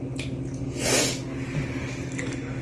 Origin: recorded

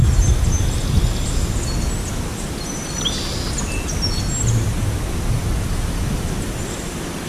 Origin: recorded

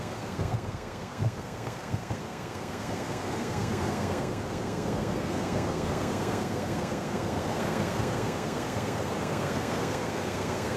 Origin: remade